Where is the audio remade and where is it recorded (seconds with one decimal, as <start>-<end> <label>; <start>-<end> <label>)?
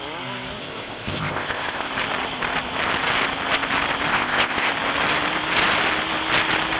0.0-0.6 recorded; 0.6-1.9 remade; 1.9-4.1 recorded; 4.1-4.7 remade; 4.7-6.8 recorded